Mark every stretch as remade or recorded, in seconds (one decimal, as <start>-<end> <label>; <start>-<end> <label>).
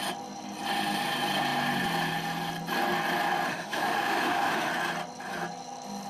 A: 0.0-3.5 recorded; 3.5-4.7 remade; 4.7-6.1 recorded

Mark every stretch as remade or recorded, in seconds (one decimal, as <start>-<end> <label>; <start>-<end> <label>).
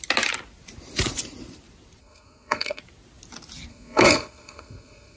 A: 0.0-2.0 recorded; 2.0-2.8 remade; 2.8-3.7 recorded; 3.7-5.2 remade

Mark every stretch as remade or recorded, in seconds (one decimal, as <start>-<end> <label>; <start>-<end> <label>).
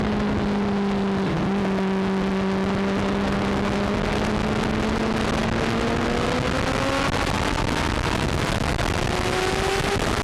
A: 0.0-10.2 recorded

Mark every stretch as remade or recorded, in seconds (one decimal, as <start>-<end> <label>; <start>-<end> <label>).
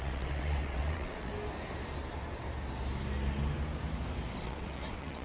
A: 0.0-1.3 remade; 1.3-4.4 recorded; 4.4-5.2 remade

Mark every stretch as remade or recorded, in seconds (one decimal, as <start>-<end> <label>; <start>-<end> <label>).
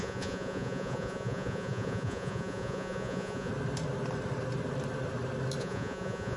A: 0.0-3.5 remade; 3.5-5.6 recorded; 5.6-6.4 remade